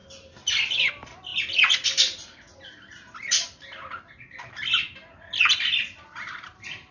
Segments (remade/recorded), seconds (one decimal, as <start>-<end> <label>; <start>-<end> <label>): 0.0-6.9 recorded